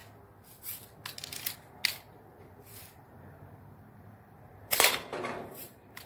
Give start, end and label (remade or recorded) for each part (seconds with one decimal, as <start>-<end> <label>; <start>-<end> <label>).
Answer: 0.0-2.8 recorded; 2.8-6.1 remade